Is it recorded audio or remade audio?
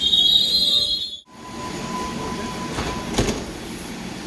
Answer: recorded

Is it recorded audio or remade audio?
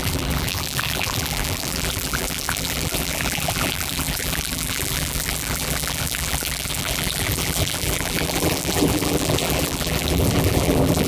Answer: remade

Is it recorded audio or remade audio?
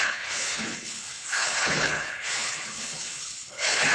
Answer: remade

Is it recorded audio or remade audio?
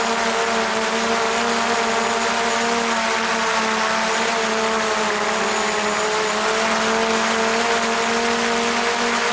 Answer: recorded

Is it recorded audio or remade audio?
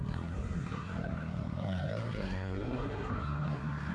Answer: remade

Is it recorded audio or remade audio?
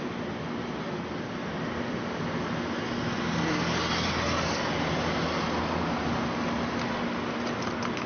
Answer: recorded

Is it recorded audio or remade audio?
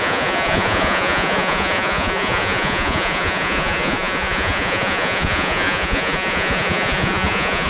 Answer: remade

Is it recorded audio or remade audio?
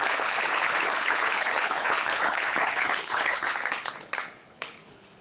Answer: remade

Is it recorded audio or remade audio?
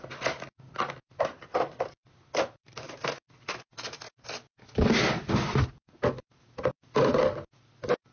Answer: recorded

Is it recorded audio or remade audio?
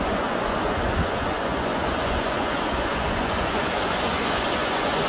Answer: remade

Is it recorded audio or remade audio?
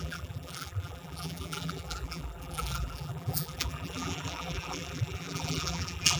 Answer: remade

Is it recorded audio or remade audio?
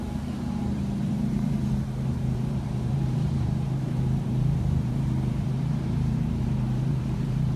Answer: remade